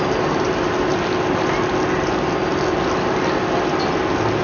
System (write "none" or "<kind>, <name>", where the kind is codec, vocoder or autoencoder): none